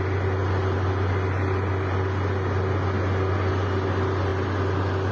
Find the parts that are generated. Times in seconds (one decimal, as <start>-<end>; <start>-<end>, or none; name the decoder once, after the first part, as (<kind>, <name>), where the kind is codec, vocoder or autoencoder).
none